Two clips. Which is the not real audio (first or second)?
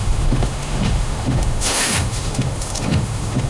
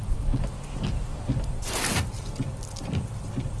first